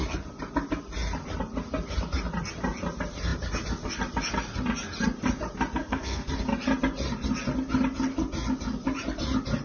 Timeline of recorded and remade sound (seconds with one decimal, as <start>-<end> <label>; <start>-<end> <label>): 0.0-5.8 recorded; 5.8-6.3 remade; 6.3-9.6 recorded